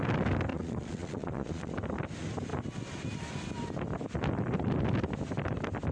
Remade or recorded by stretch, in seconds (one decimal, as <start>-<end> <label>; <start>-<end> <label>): 0.0-0.5 recorded; 0.5-1.7 remade; 1.7-5.9 recorded